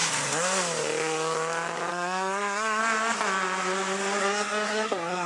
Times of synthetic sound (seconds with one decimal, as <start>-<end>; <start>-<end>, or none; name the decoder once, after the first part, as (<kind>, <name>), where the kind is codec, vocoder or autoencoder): 1.9-2.8 (codec, SNAC); 4.2-5.3